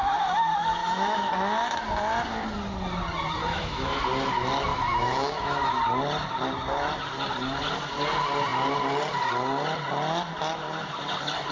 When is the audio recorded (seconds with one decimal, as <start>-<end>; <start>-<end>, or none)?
0.0-0.8; 1.3-3.4; 4.0-4.7; 5.8-11.5